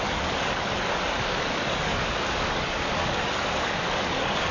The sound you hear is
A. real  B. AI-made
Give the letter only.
B